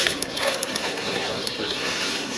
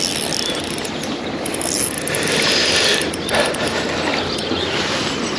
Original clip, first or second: second